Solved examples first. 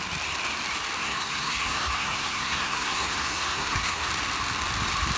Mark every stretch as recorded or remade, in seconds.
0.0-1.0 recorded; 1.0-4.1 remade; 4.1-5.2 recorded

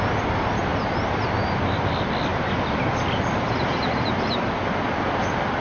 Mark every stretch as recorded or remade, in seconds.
0.0-5.6 recorded

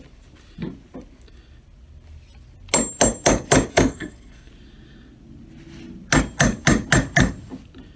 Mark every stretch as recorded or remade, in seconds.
0.0-3.7 recorded; 3.7-4.5 remade; 4.5-8.0 recorded